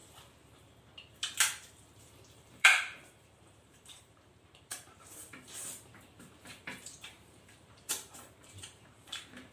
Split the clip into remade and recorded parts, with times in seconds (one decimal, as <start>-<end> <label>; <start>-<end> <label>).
0.0-2.0 recorded; 2.0-9.5 remade

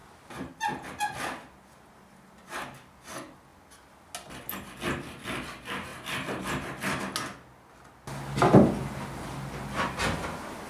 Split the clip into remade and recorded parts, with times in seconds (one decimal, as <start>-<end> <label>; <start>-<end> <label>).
0.0-0.5 remade; 0.5-5.9 recorded; 5.9-7.0 remade; 7.0-10.7 recorded

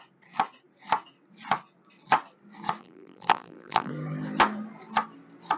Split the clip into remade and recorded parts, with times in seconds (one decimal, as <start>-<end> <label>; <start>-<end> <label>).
0.0-2.8 recorded; 2.8-3.9 remade; 3.9-5.6 recorded

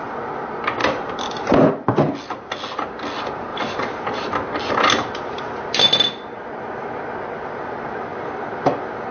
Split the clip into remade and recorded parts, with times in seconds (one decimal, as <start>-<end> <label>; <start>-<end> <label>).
0.0-3.5 recorded; 3.5-4.7 remade; 4.7-8.1 recorded; 8.1-9.1 remade

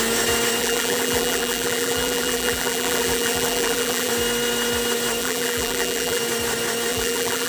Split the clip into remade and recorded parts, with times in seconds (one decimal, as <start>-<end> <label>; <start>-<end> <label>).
0.0-0.6 recorded; 0.6-4.1 remade; 4.1-5.2 recorded; 5.2-6.2 remade; 6.2-6.9 recorded; 6.9-7.5 remade